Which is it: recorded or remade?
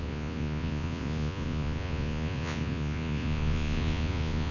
remade